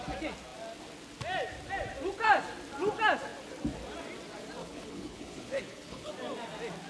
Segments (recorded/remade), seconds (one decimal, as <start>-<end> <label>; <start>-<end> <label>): 0.0-4.6 recorded; 4.6-6.1 remade; 6.1-6.9 recorded